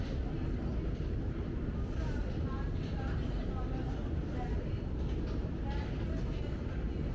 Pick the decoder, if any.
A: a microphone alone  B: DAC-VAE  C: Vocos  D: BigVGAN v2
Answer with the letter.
A